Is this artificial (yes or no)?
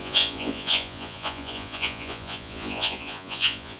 yes